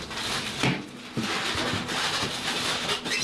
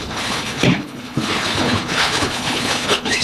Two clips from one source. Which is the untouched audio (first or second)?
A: first